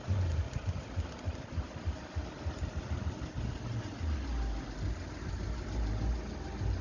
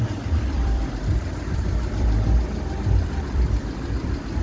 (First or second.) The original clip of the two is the first